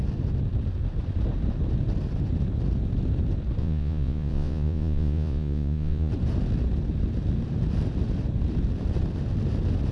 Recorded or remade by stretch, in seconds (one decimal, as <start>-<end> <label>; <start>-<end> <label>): 0.0-3.6 recorded; 3.6-6.1 remade; 6.1-9.9 recorded